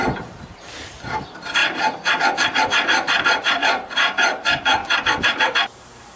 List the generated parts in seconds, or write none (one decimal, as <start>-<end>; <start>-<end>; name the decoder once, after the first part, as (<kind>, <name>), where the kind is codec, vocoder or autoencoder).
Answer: 0.0-4.8 (vocoder, BigVGAN v2); 5.8-6.2

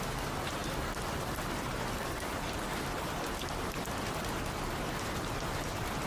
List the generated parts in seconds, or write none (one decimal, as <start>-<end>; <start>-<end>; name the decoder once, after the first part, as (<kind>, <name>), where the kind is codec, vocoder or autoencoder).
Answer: none

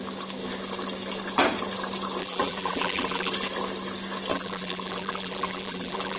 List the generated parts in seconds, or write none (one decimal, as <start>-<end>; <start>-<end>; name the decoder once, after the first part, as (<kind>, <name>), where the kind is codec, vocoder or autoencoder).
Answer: 2.2-3.3 (vocoder, BigVGAN v2); 4.3-6.2

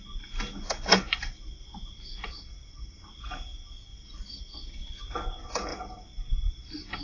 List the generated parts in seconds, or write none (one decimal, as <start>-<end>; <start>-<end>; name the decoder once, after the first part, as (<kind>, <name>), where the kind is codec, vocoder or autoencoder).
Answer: 1.2-3.2 (vocoder, BigVGAN v2); 3.9-4.4; 5.7-7.0

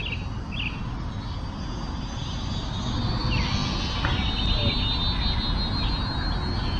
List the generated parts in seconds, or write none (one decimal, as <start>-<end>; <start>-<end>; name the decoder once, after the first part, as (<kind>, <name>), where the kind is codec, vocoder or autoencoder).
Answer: none